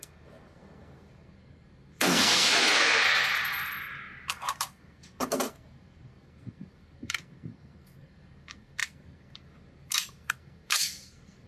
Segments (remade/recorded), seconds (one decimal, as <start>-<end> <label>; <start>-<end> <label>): 0.0-3.3 remade; 3.3-4.3 recorded; 4.3-11.5 remade